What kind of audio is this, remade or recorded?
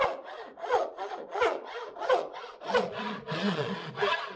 remade